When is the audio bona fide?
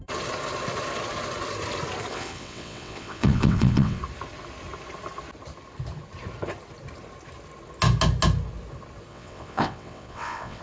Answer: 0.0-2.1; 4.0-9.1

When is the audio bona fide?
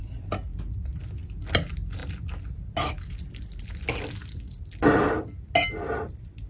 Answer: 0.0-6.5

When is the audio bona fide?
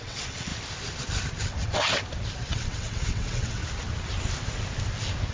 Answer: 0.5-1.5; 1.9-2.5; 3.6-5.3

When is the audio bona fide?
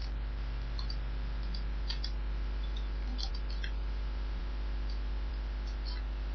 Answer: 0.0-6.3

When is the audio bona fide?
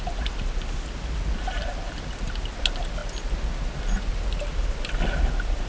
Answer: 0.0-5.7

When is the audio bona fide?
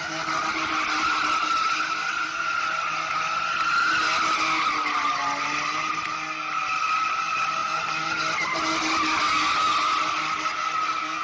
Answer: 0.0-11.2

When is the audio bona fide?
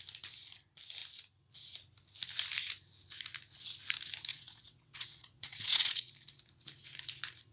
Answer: 0.0-4.3; 6.1-7.5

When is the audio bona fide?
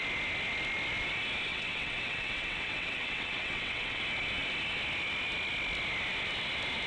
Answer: 0.0-1.5; 4.0-6.9